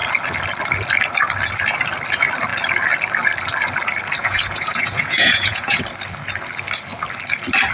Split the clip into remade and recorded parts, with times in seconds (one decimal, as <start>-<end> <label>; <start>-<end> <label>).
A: 0.0-4.2 recorded; 4.2-5.8 remade; 5.8-7.7 recorded